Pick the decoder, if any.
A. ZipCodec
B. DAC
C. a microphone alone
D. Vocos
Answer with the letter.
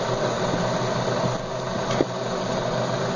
C